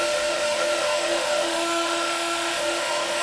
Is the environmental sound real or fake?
fake